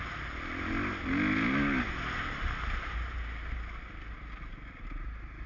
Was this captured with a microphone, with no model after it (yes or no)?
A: yes